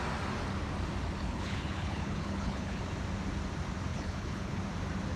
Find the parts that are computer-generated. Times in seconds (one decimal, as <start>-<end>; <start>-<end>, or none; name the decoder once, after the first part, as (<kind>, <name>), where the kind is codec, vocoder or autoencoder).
1.2-2.8 (codec, HILCodec); 3.9-4.6

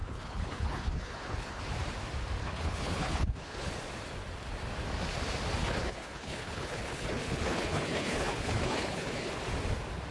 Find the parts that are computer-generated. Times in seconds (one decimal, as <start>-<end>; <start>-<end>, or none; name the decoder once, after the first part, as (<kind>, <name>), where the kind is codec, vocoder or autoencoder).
0.0-1.6 (codec, HILCodec); 2.4-3.7; 5.6-9.3

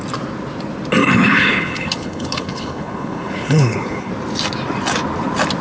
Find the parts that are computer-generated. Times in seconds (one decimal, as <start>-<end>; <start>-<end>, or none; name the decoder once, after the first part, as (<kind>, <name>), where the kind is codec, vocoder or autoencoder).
1.0-4.1 (codec, HILCodec)

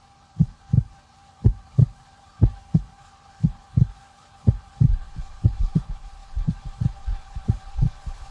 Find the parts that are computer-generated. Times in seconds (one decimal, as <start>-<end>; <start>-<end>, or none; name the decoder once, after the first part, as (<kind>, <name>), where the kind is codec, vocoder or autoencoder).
0.0-8.3 (codec, HILCodec)

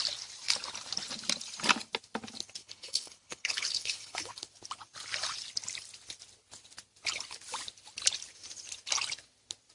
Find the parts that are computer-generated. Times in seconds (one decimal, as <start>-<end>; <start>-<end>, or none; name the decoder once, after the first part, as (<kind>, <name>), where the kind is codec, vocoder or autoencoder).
2.6-4.3 (codec, HILCodec)

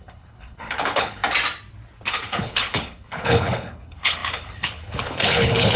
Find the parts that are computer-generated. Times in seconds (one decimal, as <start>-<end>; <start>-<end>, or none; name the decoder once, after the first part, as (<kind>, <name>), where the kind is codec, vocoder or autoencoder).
0.0-1.2 (codec, HILCodec); 2.1-5.8

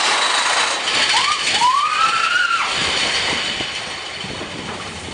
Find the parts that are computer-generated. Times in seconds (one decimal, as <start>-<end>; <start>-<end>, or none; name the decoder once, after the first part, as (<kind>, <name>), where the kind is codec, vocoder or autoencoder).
none